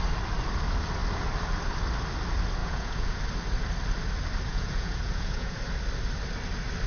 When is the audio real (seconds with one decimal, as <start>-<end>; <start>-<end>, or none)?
0.0-2.6; 3.2-4.5; 5.6-6.9